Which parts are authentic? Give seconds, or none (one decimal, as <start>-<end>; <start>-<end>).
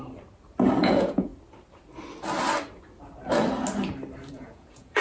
0.0-0.8; 1.3-4.3